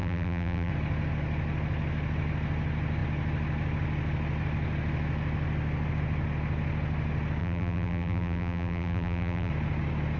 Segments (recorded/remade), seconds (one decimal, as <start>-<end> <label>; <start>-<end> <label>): 0.0-0.7 remade; 0.7-7.4 recorded; 7.4-9.5 remade; 9.5-10.2 recorded